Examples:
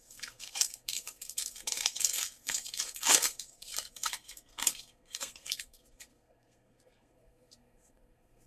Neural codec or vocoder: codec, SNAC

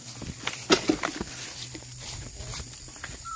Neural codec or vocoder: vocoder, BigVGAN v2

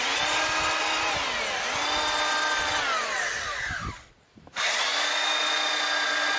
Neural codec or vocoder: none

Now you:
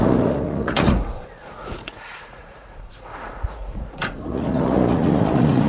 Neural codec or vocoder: vocoder, Vocos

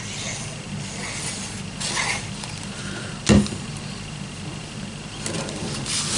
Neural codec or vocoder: none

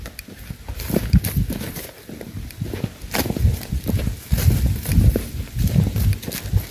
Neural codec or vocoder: none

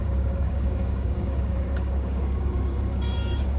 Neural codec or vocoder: codec, DAC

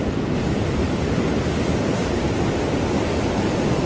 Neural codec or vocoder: none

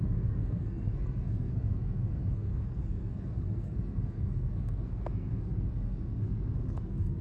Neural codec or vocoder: codec, SNAC